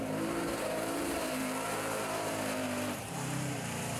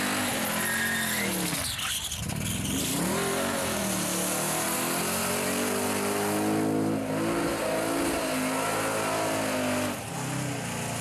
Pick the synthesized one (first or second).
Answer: first